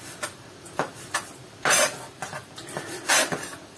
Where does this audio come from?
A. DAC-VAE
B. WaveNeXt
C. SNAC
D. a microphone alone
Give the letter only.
D